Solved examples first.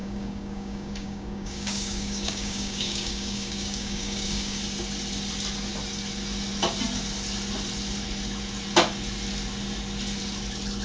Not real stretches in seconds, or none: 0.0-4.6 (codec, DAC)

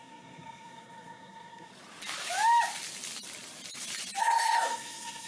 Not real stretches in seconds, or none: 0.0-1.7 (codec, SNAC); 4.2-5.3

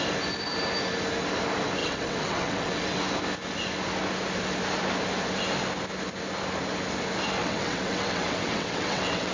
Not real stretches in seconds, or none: 1.8-3.0 (vocoder, WaveNeXt); 7.4-9.3